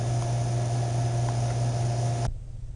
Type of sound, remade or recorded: recorded